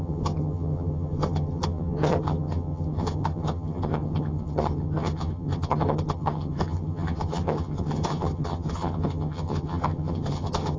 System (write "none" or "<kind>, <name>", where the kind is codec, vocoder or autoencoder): vocoder, HiFi-GAN